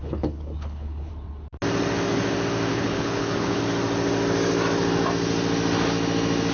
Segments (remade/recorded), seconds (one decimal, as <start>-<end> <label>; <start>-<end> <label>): 0.0-1.1 remade; 1.1-2.7 recorded; 2.7-3.6 remade; 3.6-6.5 recorded